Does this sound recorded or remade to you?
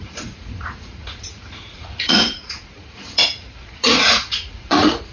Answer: remade